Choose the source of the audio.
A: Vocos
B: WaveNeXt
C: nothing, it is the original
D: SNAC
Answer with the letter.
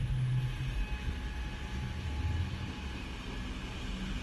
C